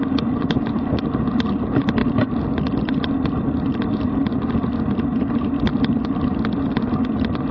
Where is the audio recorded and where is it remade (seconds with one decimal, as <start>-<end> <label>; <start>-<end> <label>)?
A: 0.0-7.5 recorded